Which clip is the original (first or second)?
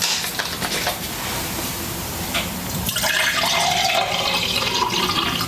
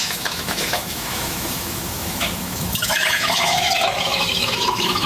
first